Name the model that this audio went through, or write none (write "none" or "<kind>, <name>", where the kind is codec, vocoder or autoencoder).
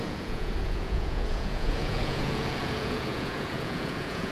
vocoder, Vocos